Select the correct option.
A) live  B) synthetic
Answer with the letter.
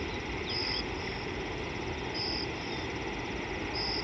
A